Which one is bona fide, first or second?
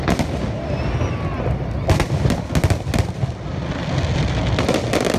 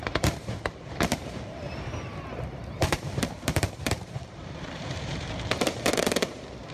first